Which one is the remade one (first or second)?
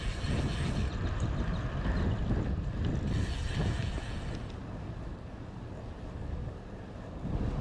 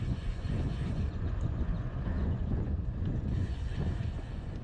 second